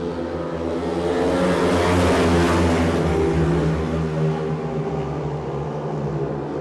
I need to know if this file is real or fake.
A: real